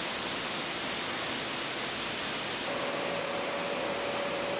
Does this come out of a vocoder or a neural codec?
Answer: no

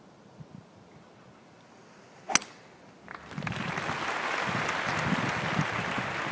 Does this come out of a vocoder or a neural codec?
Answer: no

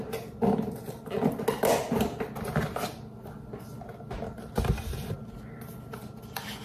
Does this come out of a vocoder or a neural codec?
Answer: no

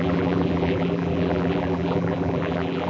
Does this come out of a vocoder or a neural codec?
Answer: yes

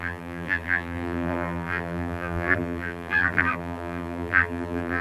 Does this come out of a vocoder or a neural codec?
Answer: yes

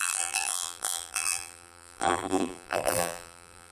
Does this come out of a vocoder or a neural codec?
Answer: yes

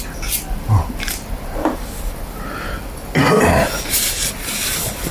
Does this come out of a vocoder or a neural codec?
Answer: no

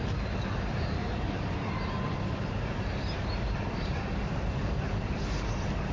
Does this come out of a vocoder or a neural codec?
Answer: yes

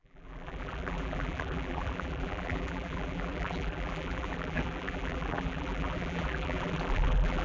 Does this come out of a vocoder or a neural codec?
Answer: yes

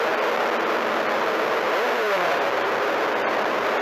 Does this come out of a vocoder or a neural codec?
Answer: yes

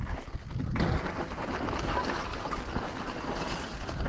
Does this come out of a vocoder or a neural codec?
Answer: yes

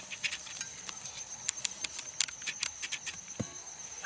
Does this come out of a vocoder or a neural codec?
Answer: no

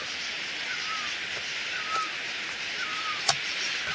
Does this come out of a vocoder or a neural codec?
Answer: no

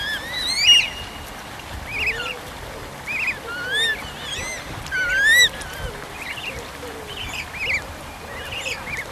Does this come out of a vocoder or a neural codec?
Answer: no